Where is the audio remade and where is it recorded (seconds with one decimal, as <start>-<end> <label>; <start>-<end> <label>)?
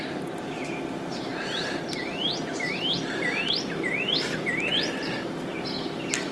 0.0-1.3 recorded; 1.3-3.2 remade; 3.2-6.3 recorded